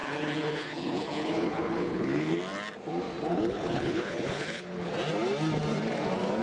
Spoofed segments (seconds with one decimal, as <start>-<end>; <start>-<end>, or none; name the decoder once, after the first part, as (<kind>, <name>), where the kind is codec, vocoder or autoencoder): 0.0-2.4 (codec, HILCodec); 3.3-4.9